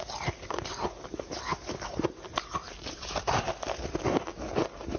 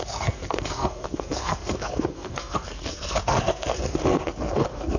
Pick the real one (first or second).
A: first